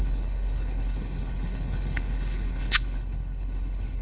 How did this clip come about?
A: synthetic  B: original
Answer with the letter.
A